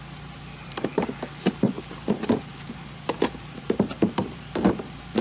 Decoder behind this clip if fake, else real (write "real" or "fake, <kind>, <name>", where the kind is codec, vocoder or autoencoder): fake, vocoder, BigVGAN v2